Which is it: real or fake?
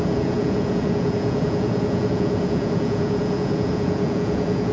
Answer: fake